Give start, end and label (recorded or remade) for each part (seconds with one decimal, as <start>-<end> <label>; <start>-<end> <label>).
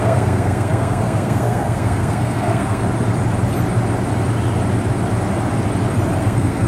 0.0-2.8 remade; 2.8-6.2 recorded; 6.2-6.7 remade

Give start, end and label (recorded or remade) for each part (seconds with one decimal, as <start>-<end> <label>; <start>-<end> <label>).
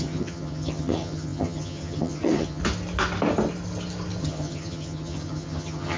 0.0-2.6 remade; 2.6-4.2 recorded; 4.2-6.0 remade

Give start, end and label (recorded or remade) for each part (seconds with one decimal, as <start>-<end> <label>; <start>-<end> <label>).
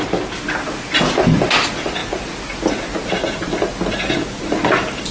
0.0-5.1 recorded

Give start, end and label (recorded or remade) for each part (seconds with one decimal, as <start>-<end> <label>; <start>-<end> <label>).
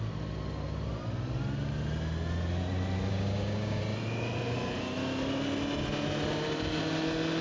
0.0-3.1 recorded; 3.1-3.8 remade; 3.8-7.4 recorded